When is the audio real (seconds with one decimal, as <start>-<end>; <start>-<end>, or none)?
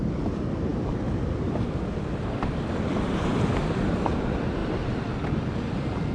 0.0-6.1